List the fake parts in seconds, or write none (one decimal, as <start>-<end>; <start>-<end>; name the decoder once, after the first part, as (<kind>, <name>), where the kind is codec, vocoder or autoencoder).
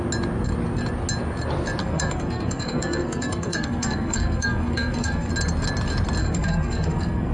1.8-5.3 (codec, SNAC); 6.2-7.3